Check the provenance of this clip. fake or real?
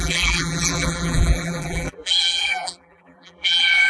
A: fake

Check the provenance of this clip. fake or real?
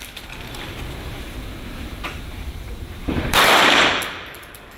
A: fake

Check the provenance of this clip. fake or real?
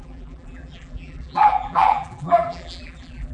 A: fake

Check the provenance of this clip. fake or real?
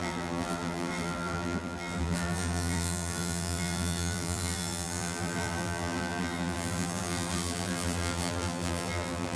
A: fake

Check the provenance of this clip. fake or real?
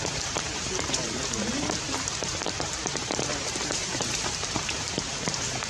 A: fake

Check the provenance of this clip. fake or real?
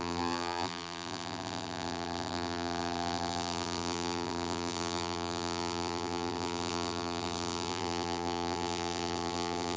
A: fake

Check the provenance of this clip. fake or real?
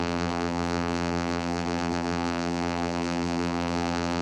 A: fake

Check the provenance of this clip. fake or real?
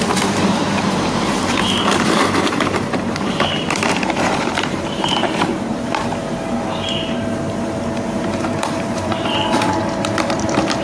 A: fake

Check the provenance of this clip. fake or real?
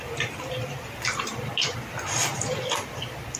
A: fake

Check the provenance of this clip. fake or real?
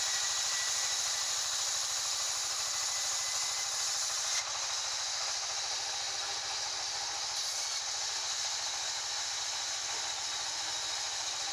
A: real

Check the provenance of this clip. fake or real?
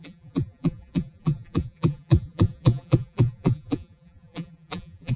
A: fake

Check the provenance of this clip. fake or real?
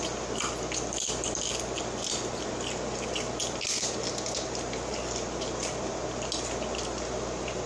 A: real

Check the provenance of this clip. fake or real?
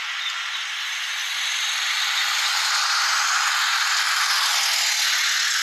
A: real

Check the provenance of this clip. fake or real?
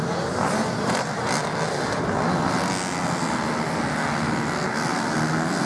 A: real